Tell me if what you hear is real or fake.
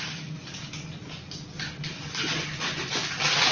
real